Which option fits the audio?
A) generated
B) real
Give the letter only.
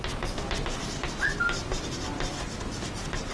B